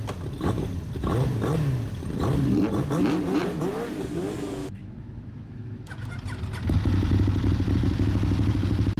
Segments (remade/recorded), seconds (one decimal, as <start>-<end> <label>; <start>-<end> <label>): 0.0-4.6 recorded; 4.6-5.9 remade; 5.9-9.0 recorded